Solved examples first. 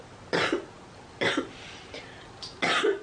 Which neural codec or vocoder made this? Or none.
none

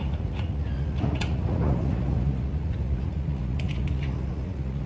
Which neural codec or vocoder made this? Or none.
vocoder, Vocos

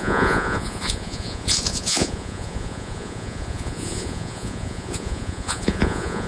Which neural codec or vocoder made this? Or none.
vocoder, Vocos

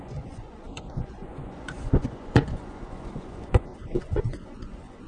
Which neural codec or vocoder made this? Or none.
vocoder, Vocos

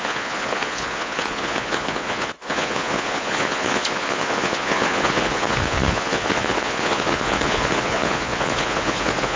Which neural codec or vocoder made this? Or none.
vocoder, Vocos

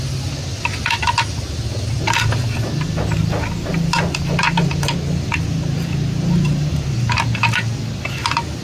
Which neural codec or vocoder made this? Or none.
none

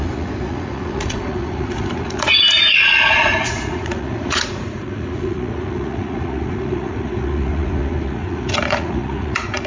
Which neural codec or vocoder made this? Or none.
vocoder, Vocos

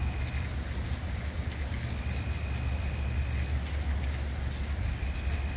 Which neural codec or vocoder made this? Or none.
none